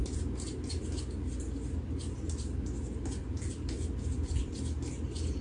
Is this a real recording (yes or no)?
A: yes